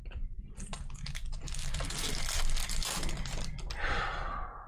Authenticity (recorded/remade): recorded